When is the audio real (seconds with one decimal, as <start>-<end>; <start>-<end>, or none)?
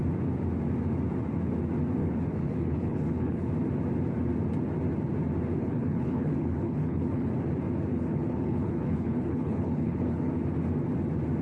0.0-2.0; 3.5-5.6; 7.3-7.9; 10.3-11.4